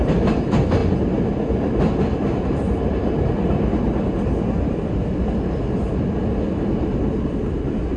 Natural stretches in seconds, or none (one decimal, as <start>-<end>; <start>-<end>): 0.0-8.0